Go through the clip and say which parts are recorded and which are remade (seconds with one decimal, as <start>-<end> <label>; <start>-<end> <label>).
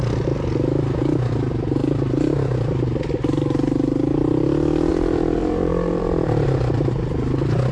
0.0-4.9 recorded; 4.9-6.9 remade; 6.9-7.7 recorded